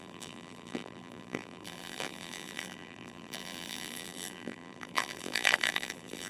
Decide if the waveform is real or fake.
fake